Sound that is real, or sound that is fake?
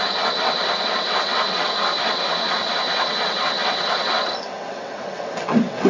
fake